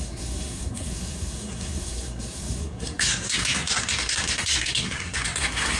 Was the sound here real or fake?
fake